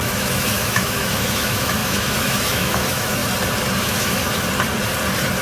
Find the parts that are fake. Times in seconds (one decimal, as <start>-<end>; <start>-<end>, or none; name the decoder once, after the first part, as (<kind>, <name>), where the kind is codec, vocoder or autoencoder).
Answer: 0.0-3.2 (autoencoder, DAC-VAE); 3.8-4.2

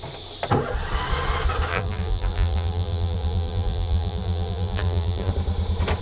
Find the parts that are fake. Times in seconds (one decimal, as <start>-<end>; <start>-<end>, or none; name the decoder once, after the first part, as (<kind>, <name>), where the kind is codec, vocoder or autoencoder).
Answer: 1.7-5.3 (vocoder, BigVGAN v2)

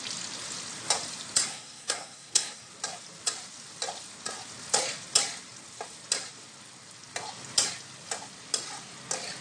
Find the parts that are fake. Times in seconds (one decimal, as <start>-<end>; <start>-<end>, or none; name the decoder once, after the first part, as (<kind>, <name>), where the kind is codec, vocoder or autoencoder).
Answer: 1.5-2.7 (codec, SNAC)